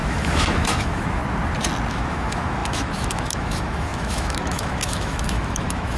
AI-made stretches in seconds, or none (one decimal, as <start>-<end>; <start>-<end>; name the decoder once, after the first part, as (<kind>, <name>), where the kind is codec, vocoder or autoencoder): 0.0-1.2 (autoencoder, DAC-VAE); 1.9-6.0